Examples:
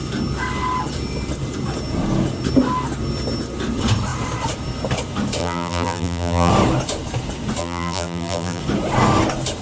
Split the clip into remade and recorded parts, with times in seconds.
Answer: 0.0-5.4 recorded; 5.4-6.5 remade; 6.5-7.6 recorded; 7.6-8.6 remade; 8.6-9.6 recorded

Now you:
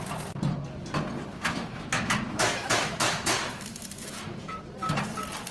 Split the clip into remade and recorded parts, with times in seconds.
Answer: 0.0-1.3 recorded; 1.3-4.6 remade; 4.6-5.5 recorded

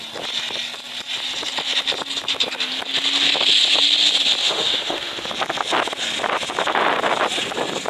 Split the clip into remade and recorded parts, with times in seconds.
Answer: 0.0-4.4 recorded; 4.4-5.3 remade; 5.3-7.9 recorded

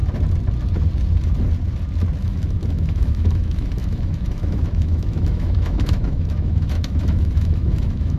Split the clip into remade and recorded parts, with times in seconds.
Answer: 0.0-2.2 recorded; 2.2-8.2 remade

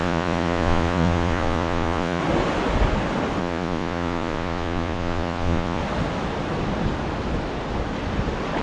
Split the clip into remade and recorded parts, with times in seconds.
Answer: 0.0-2.2 remade; 2.2-3.4 recorded; 3.4-5.8 remade; 5.8-8.6 recorded

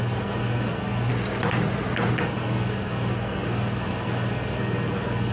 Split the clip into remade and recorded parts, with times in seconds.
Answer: 0.0-1.1 remade; 1.1-2.2 recorded; 2.2-5.3 remade

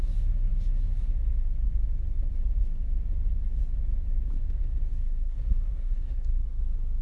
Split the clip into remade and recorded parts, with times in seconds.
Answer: 0.0-5.0 recorded; 5.0-6.6 remade; 6.6-7.0 recorded

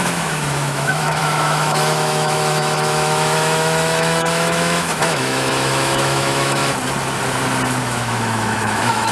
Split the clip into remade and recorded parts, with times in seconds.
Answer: 0.0-6.6 remade; 6.6-7.8 recorded; 7.8-9.1 remade